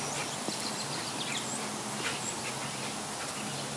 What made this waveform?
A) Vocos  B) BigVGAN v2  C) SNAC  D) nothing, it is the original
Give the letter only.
D